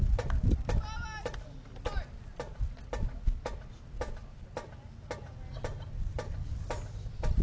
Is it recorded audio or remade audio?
recorded